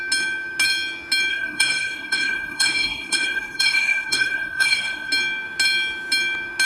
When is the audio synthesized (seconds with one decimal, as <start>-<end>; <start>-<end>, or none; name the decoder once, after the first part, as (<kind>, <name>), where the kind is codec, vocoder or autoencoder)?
1.3-5.1 (codec, SNAC)